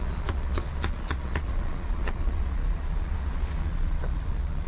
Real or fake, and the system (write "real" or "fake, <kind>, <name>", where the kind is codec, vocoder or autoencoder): fake, vocoder, Vocos